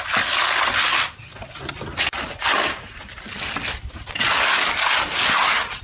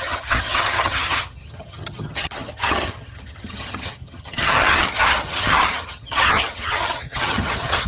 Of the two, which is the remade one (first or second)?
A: second